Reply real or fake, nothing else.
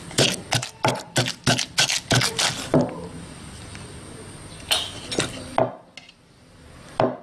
real